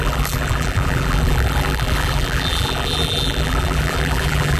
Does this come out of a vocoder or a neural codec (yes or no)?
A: yes